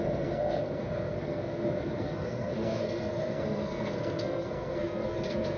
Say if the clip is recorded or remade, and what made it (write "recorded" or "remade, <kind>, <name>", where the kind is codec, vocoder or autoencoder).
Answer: remade, codec, SNAC